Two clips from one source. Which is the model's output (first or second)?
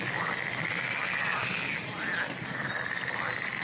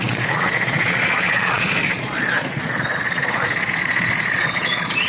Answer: second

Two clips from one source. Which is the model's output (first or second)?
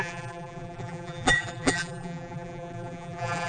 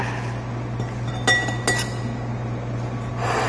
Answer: first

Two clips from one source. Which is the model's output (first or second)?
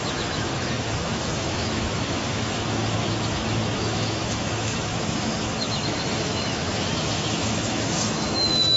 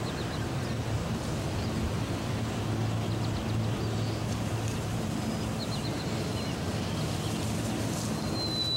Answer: first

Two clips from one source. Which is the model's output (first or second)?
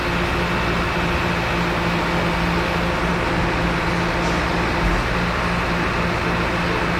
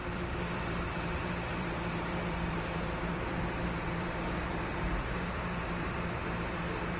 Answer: second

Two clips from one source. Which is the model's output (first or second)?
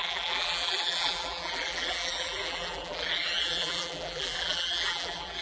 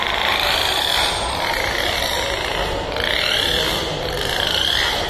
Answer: first